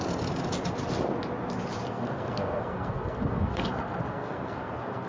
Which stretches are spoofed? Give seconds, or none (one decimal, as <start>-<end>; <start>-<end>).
1.9-5.1